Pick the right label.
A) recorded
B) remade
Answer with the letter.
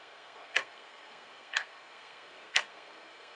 B